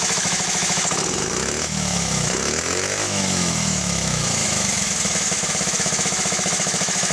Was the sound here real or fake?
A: fake